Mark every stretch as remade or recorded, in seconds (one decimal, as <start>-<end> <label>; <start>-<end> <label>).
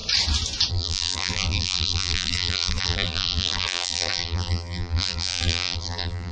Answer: 0.0-0.7 recorded; 0.7-6.3 remade